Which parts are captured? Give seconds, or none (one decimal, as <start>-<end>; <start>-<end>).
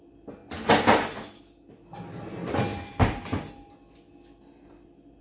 0.0-5.2